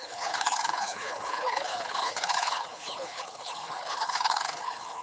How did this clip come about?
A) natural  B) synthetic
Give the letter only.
B